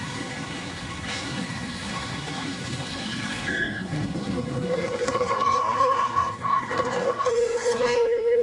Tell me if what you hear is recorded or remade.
remade